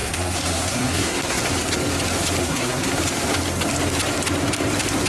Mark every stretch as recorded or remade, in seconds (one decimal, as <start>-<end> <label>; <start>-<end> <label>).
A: 0.0-1.4 remade; 1.4-2.4 recorded; 2.4-3.0 remade; 3.0-5.1 recorded